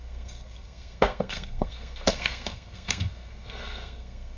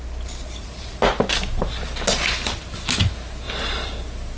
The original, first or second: second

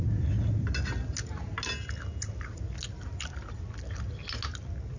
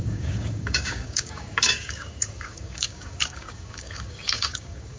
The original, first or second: first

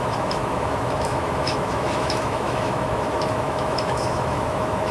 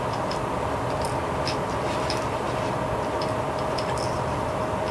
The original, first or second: second